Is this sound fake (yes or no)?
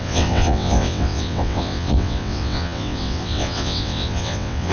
yes